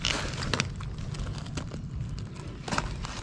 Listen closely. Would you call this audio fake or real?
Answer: real